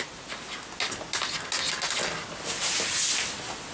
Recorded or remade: recorded